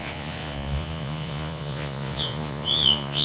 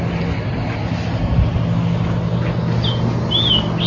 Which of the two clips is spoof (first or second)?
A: first